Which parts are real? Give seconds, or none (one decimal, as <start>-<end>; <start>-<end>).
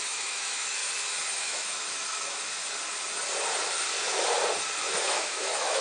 0.8-1.3; 2.6-4.8